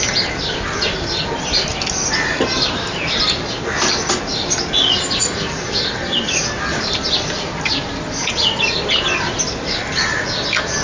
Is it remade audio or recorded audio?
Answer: recorded